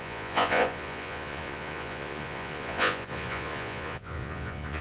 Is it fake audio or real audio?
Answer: fake